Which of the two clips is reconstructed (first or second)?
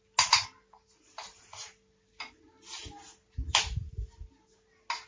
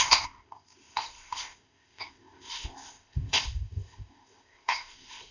second